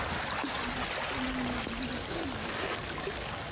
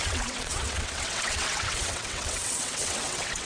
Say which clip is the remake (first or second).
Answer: second